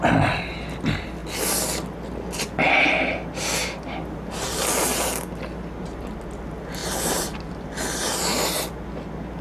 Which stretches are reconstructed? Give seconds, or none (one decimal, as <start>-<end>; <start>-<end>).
none